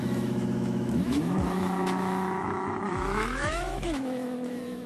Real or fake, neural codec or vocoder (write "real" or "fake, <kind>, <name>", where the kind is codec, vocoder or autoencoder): fake, autoencoder, DAC-VAE